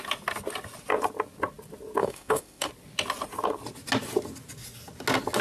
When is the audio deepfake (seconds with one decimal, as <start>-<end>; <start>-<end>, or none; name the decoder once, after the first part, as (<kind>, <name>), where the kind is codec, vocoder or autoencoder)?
2.0-2.7 (autoencoder, DAC-VAE)